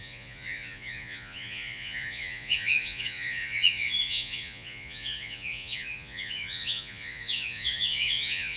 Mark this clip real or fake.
fake